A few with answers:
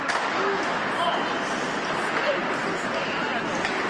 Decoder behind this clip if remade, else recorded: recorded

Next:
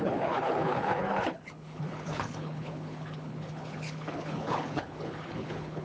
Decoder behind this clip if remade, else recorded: remade, codec, HILCodec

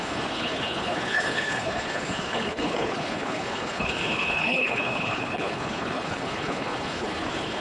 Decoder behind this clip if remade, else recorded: remade, codec, HILCodec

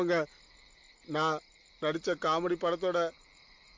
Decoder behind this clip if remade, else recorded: recorded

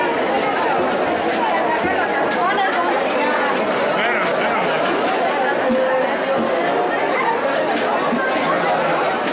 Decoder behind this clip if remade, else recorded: recorded